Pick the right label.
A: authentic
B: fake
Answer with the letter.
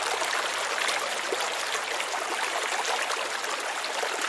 A